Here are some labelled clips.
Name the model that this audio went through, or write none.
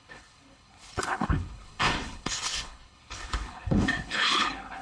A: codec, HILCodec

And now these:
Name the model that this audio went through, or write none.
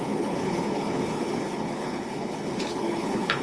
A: codec, HILCodec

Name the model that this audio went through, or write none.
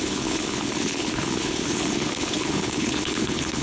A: codec, HILCodec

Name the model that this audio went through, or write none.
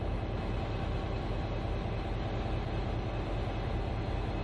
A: none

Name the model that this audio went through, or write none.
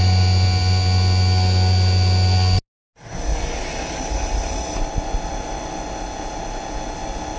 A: none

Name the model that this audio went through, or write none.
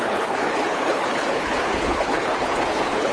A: codec, HILCodec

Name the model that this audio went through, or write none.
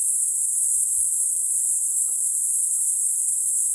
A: codec, HILCodec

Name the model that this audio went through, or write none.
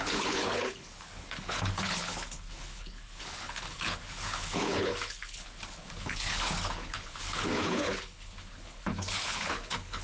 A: codec, HILCodec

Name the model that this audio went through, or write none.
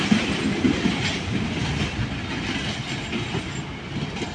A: none